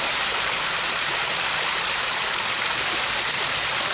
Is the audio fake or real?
real